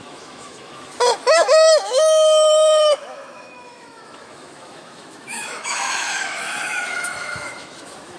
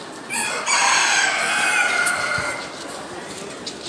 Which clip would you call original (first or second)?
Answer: second